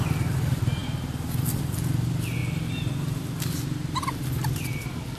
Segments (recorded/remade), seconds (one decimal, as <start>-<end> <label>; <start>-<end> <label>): 0.0-5.2 recorded